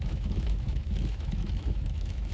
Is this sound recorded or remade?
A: remade